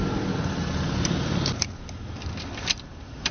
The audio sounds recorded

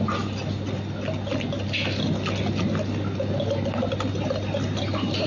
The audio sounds recorded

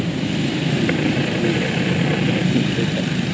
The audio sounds remade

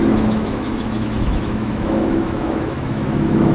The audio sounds remade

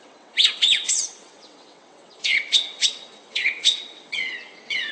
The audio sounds remade